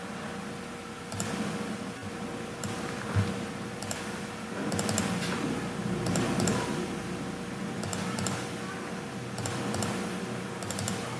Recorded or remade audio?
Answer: recorded